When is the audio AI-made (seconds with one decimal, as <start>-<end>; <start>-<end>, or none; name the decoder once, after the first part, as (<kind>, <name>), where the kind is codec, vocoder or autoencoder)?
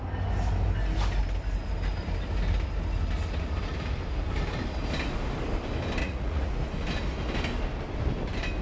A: 6.0-6.5 (vocoder, Vocos)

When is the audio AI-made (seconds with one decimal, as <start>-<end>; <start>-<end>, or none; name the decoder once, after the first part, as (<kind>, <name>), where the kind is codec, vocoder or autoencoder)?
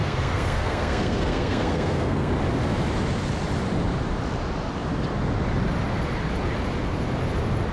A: 0.0-2.3 (codec, SNAC)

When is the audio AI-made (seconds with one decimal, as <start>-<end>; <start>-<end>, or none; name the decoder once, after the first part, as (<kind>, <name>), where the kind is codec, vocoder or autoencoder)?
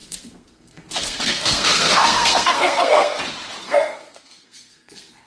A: 0.0-3.2 (codec, SNAC); 3.6-5.3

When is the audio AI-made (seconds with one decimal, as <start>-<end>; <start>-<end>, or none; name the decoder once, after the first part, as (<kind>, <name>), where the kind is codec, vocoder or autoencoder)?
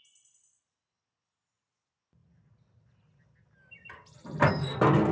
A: none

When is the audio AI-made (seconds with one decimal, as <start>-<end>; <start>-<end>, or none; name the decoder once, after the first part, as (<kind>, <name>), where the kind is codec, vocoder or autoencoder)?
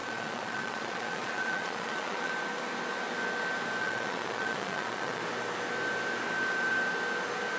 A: 0.0-2.3 (vocoder, Vocos); 3.8-5.2